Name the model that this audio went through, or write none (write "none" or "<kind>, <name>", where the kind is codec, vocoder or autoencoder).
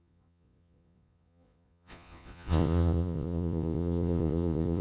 vocoder, Vocos